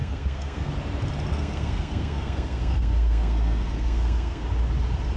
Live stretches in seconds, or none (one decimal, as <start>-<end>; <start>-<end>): 0.7-1.3; 4.4-5.2